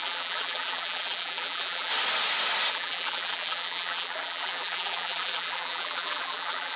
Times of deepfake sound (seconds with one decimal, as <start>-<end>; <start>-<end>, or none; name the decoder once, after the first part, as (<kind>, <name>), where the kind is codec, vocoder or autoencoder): 0.0-1.9 (vocoder, BigVGAN v2); 2.7-6.8